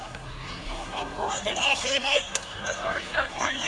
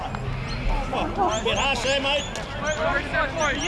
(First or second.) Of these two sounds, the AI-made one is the first